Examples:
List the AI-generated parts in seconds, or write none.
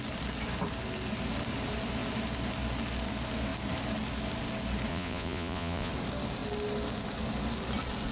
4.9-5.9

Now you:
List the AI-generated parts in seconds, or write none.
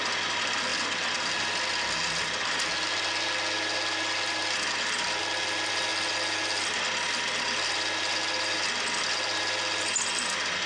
none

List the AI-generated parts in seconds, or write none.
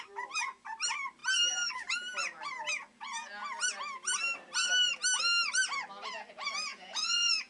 6.7-7.5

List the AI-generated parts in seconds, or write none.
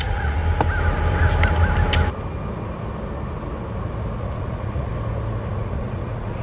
0.0-0.4; 4.2-4.9; 5.5-6.4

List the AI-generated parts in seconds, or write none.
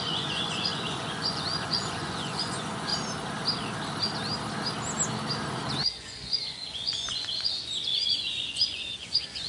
0.0-2.9; 5.9-9.5